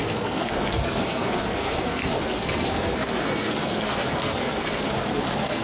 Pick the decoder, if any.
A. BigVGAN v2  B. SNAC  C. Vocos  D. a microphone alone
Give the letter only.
B